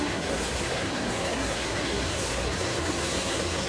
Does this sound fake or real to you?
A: fake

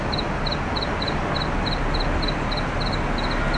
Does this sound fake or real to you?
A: real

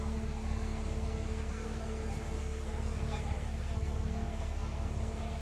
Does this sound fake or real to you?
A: fake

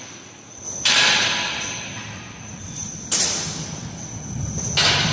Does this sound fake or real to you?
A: real